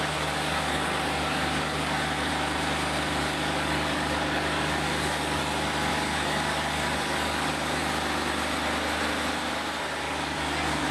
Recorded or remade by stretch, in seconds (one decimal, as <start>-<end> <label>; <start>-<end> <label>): 0.0-2.3 remade; 2.3-3.2 recorded; 3.2-5.4 remade; 5.4-5.9 recorded; 5.9-7.8 remade; 7.8-10.0 recorded; 10.0-10.9 remade